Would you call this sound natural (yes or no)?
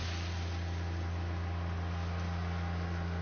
yes